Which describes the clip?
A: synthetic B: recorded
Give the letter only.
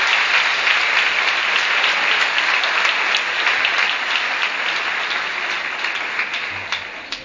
B